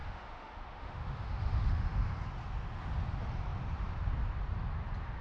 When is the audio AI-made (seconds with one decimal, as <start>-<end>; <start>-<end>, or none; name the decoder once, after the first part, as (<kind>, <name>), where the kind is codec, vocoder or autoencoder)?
0.0-2.1 (autoencoder, DAC-VAE)